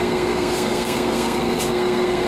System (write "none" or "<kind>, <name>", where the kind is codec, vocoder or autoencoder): codec, SNAC